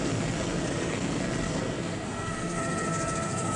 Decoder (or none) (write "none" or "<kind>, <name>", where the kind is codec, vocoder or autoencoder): codec, SNAC